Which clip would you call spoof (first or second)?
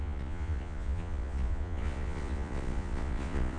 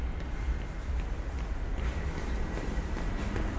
first